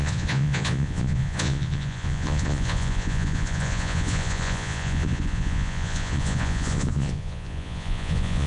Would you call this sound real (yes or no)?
no